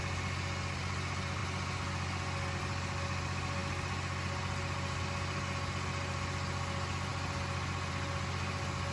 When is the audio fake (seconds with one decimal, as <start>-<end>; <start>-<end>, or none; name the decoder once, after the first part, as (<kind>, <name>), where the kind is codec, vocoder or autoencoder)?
none